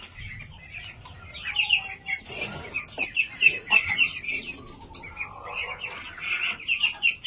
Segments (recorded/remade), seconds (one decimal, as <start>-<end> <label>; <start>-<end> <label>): 0.0-7.3 recorded